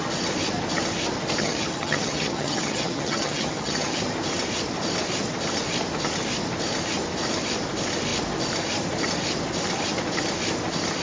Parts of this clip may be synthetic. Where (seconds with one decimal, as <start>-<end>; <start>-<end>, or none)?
1.4-4.0